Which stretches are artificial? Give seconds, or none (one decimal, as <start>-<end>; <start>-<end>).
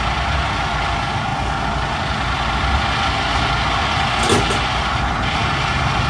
none